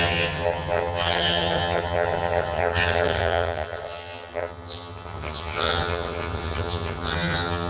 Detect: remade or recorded remade